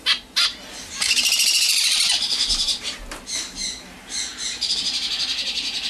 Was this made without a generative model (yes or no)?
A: no